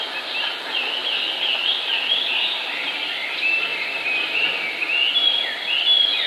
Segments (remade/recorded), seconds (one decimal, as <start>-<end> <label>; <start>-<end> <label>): 0.0-1.0 recorded; 1.0-1.9 remade; 1.9-3.7 recorded; 3.7-4.3 remade; 4.3-6.3 recorded